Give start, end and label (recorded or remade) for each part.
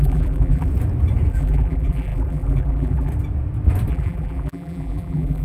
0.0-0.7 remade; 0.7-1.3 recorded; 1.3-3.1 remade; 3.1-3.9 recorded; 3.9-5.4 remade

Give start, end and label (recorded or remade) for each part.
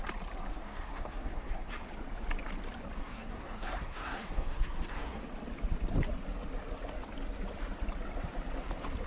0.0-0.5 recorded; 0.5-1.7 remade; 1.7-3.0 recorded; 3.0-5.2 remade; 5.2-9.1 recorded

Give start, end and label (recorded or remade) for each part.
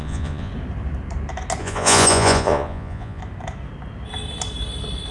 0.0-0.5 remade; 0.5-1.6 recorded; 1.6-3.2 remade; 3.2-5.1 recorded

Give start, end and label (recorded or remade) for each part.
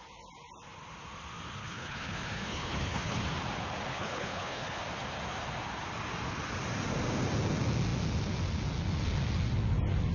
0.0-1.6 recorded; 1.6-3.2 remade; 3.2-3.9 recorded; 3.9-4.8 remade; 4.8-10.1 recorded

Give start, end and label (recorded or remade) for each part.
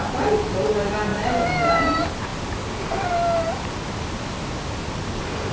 0.0-5.5 recorded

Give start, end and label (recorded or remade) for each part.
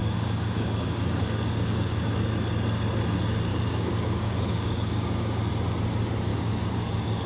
0.0-2.2 remade; 2.2-3.5 recorded; 3.5-5.5 remade; 5.5-6.3 recorded; 6.3-7.3 remade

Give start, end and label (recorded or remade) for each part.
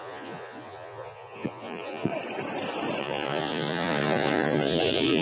0.0-2.1 remade; 2.1-3.0 recorded; 3.0-5.2 remade